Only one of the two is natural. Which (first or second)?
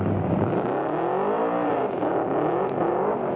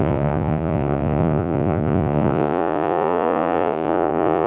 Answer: first